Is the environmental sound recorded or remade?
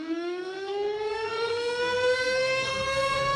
remade